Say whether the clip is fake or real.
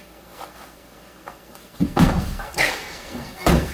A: fake